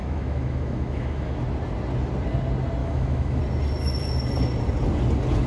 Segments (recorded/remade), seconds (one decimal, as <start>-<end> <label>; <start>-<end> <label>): 0.0-1.4 remade; 1.4-2.8 recorded; 2.8-3.4 remade; 3.4-5.5 recorded